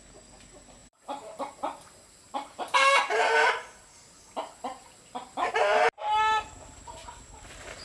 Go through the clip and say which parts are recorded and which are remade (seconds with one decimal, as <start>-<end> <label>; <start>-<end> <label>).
0.0-0.8 recorded; 0.8-5.5 remade; 5.5-7.0 recorded; 7.0-7.8 remade